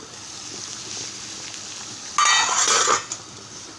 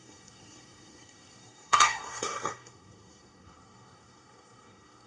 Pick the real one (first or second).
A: first